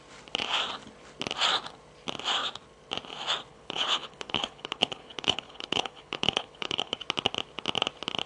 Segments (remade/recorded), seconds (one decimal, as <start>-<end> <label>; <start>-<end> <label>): 0.0-3.5 recorded; 3.5-7.0 remade; 7.0-8.3 recorded